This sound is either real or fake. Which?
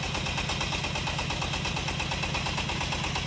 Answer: real